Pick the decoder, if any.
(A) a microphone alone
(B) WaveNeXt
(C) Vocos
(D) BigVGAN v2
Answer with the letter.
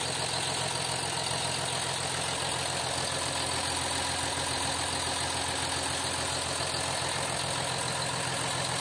A